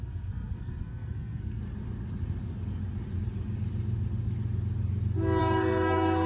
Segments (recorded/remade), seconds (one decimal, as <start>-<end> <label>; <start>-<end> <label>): 0.0-1.6 remade; 1.6-5.4 recorded; 5.4-6.3 remade